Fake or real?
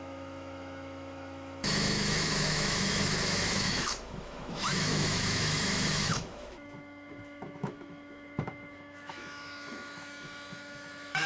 fake